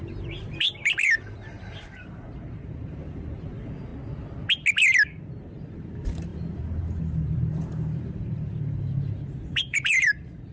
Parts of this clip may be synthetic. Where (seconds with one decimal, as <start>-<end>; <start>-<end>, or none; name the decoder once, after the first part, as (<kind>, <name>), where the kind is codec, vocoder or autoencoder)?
0.0-3.9 (vocoder, BigVGAN v2); 5.2-10.5